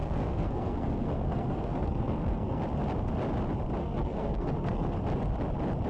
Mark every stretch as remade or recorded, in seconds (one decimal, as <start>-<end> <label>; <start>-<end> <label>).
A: 0.0-2.6 remade; 2.6-3.8 recorded; 3.8-5.0 remade; 5.0-5.9 recorded